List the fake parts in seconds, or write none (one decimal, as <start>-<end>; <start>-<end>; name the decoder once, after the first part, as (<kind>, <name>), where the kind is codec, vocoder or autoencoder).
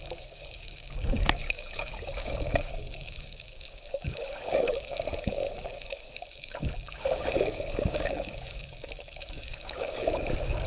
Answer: 0.0-10.7 (codec, DAC)